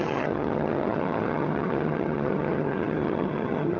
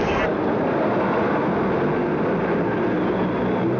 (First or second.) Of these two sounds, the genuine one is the second